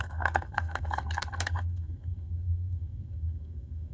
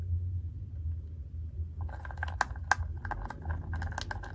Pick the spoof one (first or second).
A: first